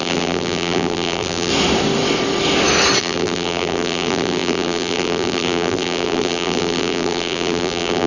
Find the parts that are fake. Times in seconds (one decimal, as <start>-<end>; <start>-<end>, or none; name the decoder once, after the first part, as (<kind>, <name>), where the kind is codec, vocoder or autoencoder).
0.0-1.5 (vocoder, BigVGAN v2); 3.0-8.1